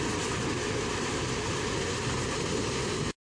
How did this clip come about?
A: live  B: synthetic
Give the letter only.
A